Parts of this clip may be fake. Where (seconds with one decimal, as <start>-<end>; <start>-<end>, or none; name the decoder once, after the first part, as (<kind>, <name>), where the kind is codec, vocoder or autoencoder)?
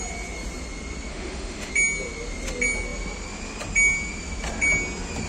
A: 1.1-1.7 (autoencoder, DAC-VAE)